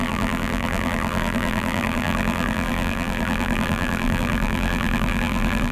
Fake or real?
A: fake